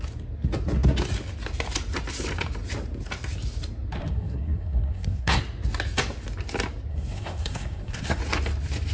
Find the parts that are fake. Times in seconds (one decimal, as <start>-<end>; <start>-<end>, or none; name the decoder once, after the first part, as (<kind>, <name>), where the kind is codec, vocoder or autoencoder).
4.0-5.4 (codec, SNAC); 6.9-8.2